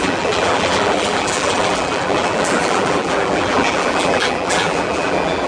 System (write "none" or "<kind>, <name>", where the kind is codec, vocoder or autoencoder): vocoder, BigVGAN v2